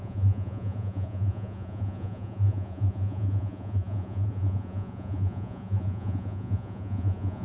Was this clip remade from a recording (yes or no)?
yes